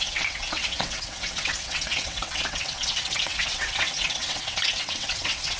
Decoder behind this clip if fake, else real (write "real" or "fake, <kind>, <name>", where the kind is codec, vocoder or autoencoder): fake, vocoder, WaveNeXt